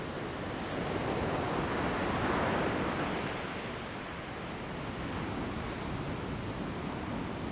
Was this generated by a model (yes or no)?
no